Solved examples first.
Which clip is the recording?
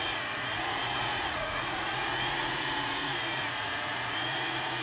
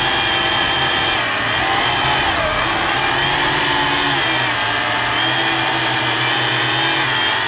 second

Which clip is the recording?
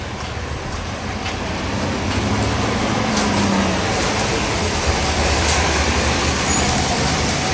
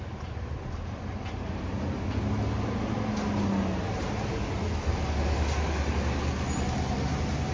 second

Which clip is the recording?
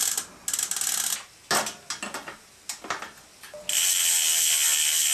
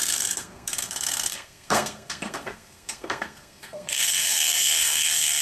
first